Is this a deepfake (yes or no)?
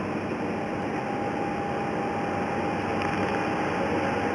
no